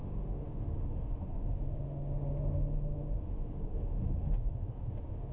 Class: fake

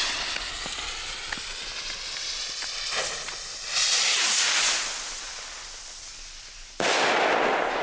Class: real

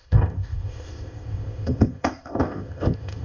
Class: fake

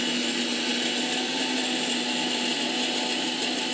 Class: real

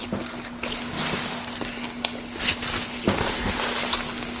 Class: real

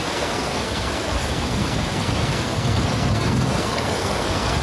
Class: fake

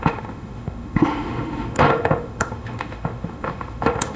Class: fake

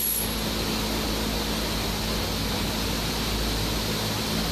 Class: real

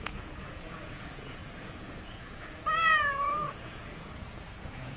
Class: fake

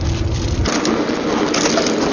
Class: real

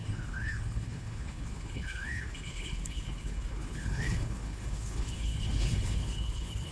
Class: fake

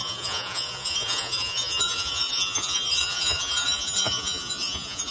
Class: fake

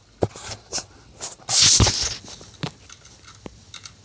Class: real